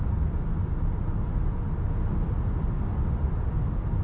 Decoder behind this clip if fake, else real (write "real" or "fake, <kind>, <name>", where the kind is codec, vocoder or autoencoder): real